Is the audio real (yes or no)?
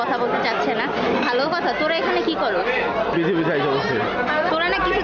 yes